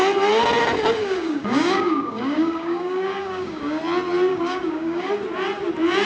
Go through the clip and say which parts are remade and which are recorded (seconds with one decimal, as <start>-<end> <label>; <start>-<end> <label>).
0.0-1.0 recorded; 1.0-3.8 remade; 3.8-4.3 recorded; 4.3-5.1 remade; 5.1-6.0 recorded